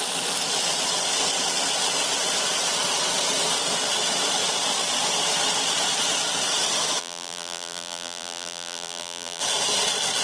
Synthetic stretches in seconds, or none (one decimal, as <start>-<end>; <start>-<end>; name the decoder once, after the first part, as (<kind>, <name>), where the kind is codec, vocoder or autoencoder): 7.0-9.4 (vocoder, BigVGAN v2)